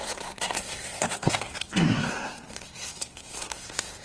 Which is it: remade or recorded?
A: remade